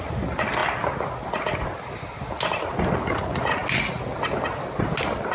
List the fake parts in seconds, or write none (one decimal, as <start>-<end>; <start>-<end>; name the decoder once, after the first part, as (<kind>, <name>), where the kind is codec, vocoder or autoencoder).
none